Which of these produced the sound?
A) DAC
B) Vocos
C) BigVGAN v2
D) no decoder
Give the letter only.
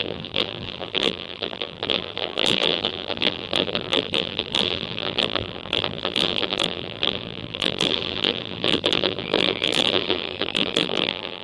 C